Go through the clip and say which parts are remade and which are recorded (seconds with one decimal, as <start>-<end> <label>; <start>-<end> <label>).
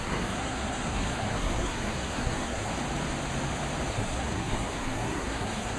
0.0-2.7 remade; 2.7-3.9 recorded; 3.9-5.8 remade